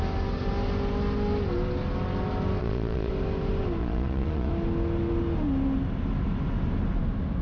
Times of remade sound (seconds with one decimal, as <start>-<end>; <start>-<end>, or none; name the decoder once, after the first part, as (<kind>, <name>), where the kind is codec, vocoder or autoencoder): 2.6-3.1 (vocoder, Vocos); 3.8-4.5